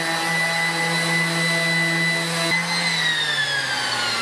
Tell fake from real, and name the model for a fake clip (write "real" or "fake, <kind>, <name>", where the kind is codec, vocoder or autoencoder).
real